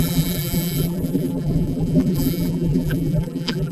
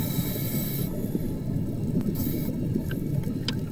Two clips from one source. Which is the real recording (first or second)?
second